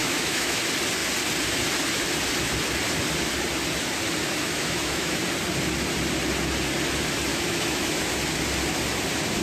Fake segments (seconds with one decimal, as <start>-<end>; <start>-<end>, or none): 0.0-0.6; 4.2-5.2; 7.3-8.0